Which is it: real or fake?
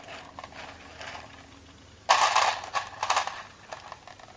fake